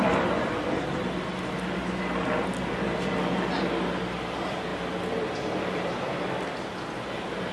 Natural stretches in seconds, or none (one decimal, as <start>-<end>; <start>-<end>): 0.0-7.5